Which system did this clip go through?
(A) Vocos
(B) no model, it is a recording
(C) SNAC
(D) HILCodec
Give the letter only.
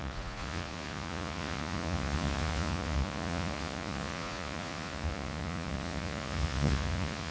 A